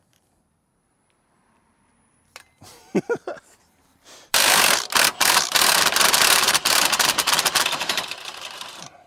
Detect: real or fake fake